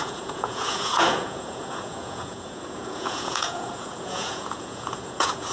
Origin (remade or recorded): remade